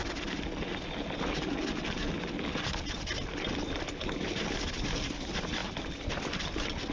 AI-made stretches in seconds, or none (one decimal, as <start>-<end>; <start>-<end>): none